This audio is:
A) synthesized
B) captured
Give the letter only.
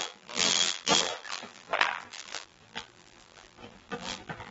A